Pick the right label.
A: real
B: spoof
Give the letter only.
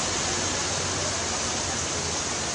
A